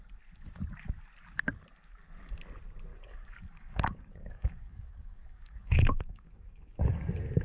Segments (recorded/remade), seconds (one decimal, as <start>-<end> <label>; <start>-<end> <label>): 0.0-2.9 recorded; 2.9-7.0 remade; 7.0-7.4 recorded

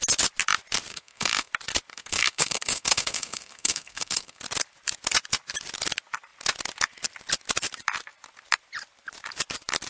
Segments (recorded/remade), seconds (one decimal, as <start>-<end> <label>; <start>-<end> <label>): 0.0-0.9 recorded; 0.9-1.5 remade; 1.5-1.9 recorded; 1.9-4.4 remade; 4.4-9.9 recorded

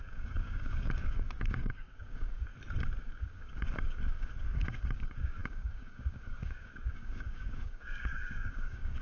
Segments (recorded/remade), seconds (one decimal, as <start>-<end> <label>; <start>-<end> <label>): 0.0-2.5 remade; 2.5-3.0 recorded; 3.0-9.0 remade